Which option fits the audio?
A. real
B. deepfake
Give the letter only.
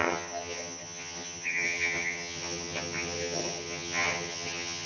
B